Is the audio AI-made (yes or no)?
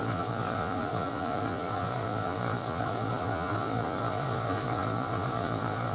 yes